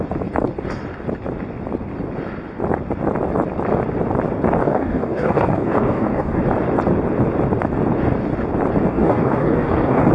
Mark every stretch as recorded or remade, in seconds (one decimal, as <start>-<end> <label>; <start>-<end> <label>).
0.0-4.6 recorded; 4.6-6.4 remade; 6.4-8.9 recorded; 8.9-10.1 remade